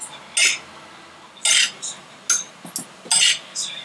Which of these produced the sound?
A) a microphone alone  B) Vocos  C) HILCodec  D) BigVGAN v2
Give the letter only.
A